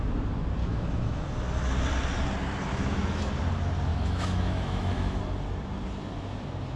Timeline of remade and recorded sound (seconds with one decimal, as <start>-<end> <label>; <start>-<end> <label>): 0.0-0.6 recorded; 0.6-1.2 remade; 1.2-2.7 recorded; 2.7-3.3 remade; 3.3-3.9 recorded; 3.9-5.2 remade; 5.2-6.8 recorded